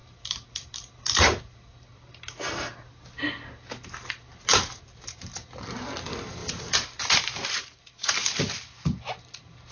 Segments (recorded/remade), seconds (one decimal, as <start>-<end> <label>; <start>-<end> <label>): 0.0-1.7 remade; 1.7-4.5 recorded; 4.5-5.2 remade; 5.2-6.4 recorded; 6.4-8.4 remade; 8.4-9.7 recorded